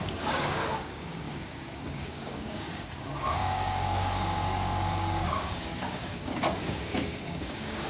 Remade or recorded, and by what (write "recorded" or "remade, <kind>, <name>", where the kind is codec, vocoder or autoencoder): remade, codec, DAC